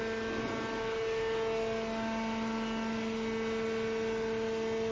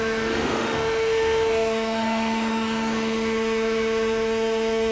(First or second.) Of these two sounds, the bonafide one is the first